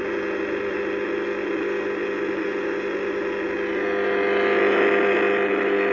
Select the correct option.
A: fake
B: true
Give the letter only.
B